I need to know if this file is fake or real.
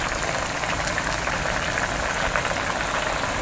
real